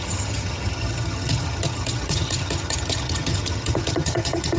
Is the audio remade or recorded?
remade